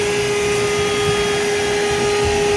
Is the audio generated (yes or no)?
no